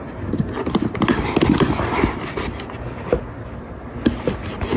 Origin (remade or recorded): recorded